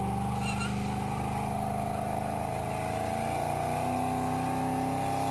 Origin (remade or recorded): remade